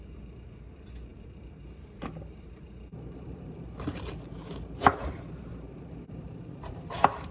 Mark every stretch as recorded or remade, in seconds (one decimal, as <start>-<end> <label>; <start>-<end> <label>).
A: 0.0-7.3 remade